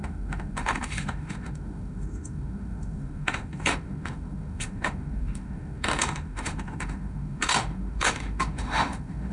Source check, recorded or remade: remade